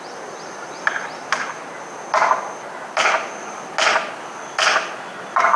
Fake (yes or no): no